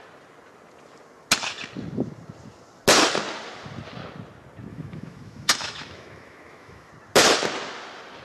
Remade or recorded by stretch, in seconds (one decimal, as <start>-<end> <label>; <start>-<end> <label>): 0.0-4.7 recorded; 4.7-6.9 remade; 6.9-8.2 recorded